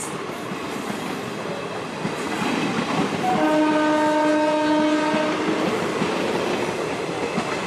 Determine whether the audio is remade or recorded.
recorded